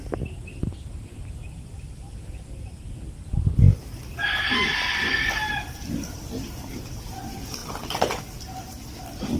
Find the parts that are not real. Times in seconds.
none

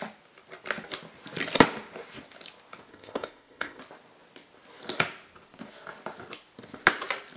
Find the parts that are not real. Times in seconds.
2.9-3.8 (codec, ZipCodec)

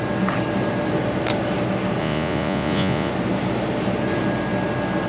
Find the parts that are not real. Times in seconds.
2.0-3.1 (vocoder, Vocos)

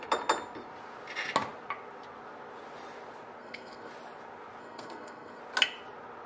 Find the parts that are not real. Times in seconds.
3.4-3.9 (codec, SNAC); 4.6-5.4

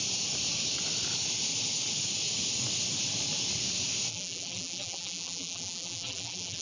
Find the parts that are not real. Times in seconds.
4.1-6.6 (vocoder, BigVGAN v2)